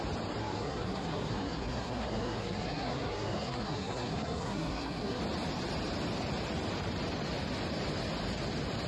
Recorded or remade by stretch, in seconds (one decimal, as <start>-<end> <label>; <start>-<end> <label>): 0.0-0.4 recorded; 0.4-5.2 remade; 5.2-8.9 recorded

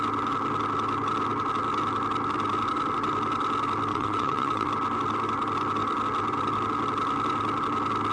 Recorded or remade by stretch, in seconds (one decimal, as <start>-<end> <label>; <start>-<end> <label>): 0.0-3.9 recorded; 3.9-4.7 remade; 4.7-8.1 recorded

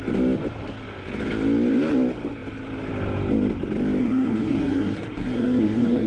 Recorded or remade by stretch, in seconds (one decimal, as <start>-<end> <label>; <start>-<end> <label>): 0.0-4.0 recorded; 4.0-6.1 remade

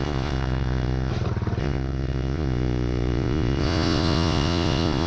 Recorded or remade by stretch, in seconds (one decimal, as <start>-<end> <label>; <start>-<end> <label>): 0.0-1.1 remade; 1.1-1.6 recorded; 1.6-5.1 remade

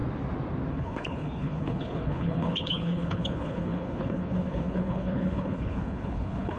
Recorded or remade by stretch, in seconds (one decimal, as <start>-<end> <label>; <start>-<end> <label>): 0.0-0.7 recorded; 0.7-6.6 remade

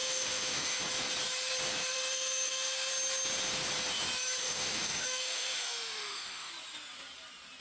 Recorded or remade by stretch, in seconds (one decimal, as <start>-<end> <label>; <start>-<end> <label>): 0.0-0.8 remade; 0.8-1.9 recorded; 1.9-2.9 remade; 2.9-4.4 recorded; 4.4-6.5 remade; 6.5-7.6 recorded

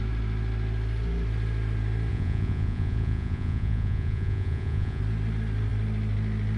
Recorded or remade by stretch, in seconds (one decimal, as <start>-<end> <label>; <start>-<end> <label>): 0.0-2.1 recorded; 2.1-5.0 remade; 5.0-6.6 recorded

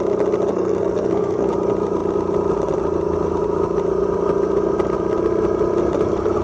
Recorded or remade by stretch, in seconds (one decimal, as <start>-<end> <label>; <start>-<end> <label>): 0.0-0.5 recorded; 0.5-1.5 remade; 1.5-6.4 recorded